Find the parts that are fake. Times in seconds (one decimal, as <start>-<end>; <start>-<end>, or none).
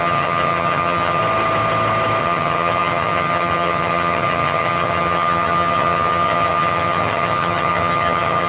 0.0-1.2; 2.2-8.5